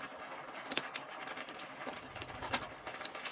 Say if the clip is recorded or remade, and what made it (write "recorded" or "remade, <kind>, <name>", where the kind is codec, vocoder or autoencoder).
recorded